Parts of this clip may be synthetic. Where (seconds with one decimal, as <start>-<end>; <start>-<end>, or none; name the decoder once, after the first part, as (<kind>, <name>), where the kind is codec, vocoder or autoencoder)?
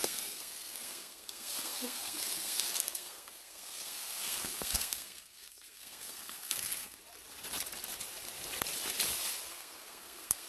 0.0-7.0 (codec, SNAC); 9.5-10.5